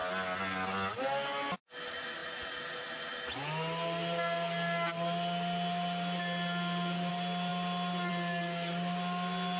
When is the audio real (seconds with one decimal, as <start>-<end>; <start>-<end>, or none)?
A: 0.0-9.6